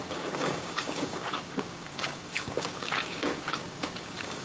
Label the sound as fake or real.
fake